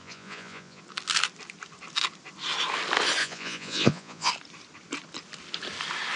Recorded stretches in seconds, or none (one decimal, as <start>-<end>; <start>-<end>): 0.8-3.2; 4.3-6.2